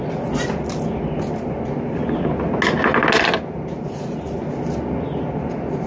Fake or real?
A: real